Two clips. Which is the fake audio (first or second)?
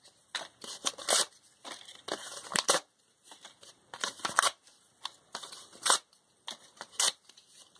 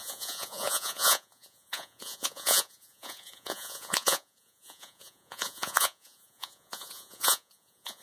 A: second